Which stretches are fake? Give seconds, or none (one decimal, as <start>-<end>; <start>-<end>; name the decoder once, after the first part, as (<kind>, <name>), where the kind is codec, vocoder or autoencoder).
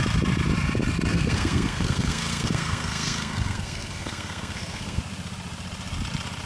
1.1-5.0 (codec, SNAC)